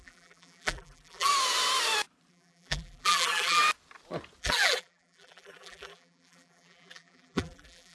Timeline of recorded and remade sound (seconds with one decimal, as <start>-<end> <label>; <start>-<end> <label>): 0.0-1.3 remade; 1.3-2.3 recorded; 2.3-3.6 remade; 3.6-4.4 recorded; 4.4-7.9 remade